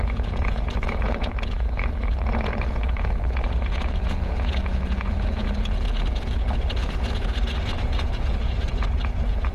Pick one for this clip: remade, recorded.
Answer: remade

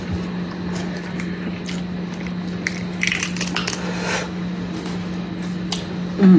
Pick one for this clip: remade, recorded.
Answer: recorded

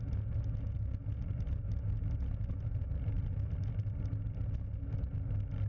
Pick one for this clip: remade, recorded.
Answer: recorded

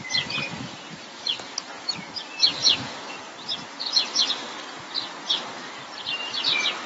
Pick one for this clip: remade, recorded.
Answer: recorded